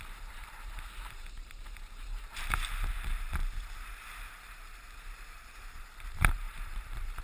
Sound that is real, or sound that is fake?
fake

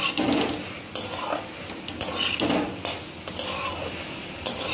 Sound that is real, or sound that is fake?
real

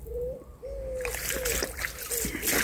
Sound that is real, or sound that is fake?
real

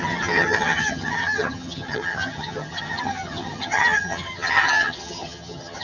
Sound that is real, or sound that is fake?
fake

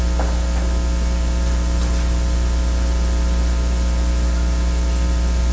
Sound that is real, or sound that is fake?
real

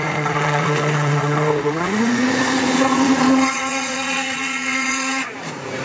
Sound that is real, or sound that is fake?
fake